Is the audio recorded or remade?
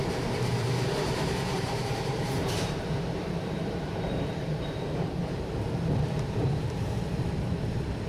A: remade